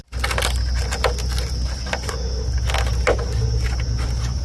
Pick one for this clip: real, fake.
real